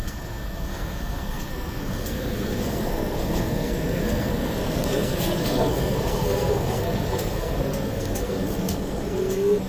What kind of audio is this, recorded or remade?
remade